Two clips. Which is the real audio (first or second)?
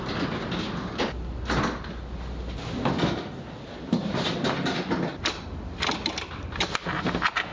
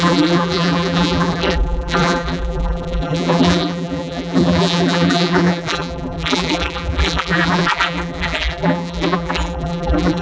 first